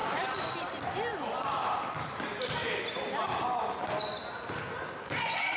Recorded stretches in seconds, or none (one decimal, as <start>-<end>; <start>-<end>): 0.0-5.6